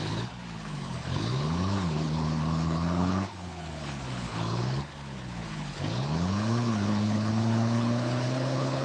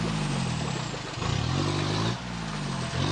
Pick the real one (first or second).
second